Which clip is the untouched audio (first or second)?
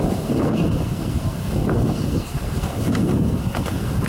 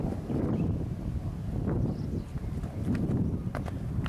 second